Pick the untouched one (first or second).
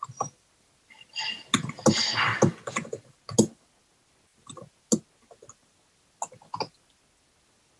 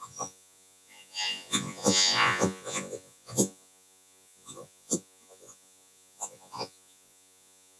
first